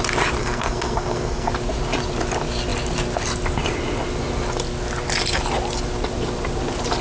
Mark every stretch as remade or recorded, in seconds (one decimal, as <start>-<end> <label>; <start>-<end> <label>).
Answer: 0.0-0.4 recorded; 0.4-1.5 remade; 1.5-7.0 recorded